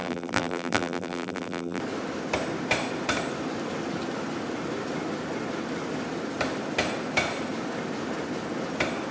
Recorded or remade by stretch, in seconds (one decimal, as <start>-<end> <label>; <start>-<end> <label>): 0.0-1.8 remade; 1.8-9.1 recorded